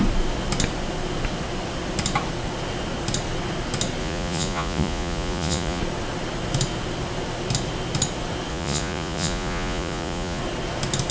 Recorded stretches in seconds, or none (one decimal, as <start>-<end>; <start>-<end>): 0.0-4.0; 5.8-8.5; 10.4-11.1